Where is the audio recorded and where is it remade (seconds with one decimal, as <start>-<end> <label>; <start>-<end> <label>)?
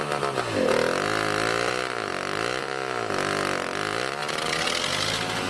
0.0-5.5 recorded